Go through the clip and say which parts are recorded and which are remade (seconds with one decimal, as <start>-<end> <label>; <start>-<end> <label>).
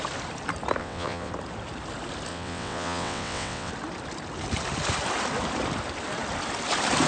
0.0-0.8 recorded; 0.8-1.3 remade; 1.3-2.3 recorded; 2.3-3.7 remade; 3.7-7.1 recorded